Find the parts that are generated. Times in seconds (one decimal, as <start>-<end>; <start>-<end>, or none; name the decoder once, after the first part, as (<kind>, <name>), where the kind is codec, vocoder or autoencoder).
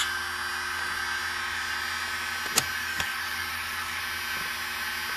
2.8-4.0 (codec, DAC)